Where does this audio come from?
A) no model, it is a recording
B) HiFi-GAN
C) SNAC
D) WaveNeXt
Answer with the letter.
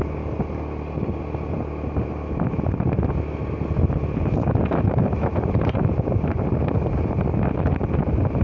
A